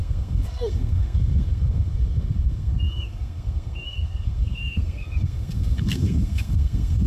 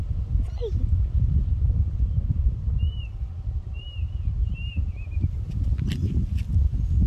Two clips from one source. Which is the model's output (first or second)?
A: first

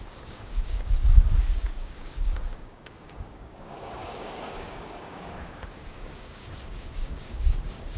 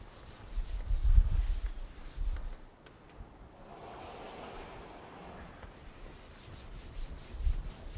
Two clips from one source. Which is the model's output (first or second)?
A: first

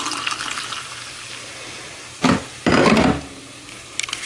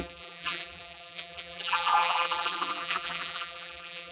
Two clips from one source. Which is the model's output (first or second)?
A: second